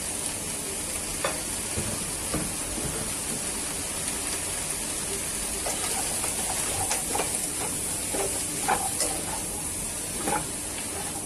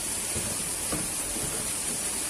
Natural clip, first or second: first